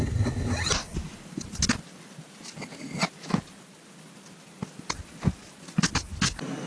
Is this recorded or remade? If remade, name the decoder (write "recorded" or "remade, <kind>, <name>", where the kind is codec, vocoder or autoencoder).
recorded